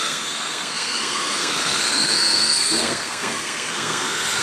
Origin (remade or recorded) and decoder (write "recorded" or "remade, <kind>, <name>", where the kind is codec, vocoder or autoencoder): remade, codec, SNAC